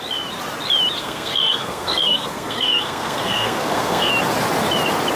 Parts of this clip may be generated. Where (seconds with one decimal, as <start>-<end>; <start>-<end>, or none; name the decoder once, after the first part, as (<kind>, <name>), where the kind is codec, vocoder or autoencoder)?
1.0-4.1 (codec, SNAC)